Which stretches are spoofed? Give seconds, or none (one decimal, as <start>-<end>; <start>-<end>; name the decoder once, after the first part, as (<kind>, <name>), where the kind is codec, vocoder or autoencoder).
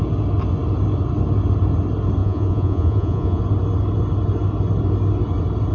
2.2-3.4 (vocoder, Vocos)